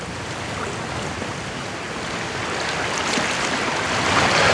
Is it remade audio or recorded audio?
recorded